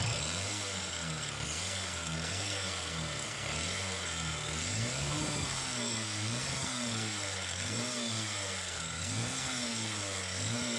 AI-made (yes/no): yes